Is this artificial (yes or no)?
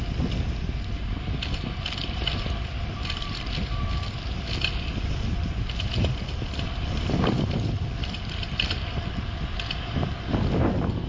no